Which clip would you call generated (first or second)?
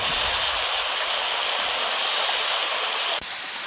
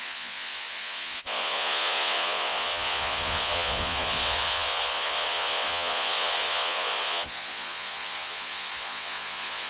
second